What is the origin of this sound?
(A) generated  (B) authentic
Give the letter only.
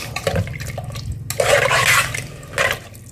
B